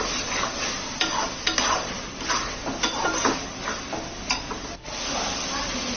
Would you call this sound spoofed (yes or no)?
no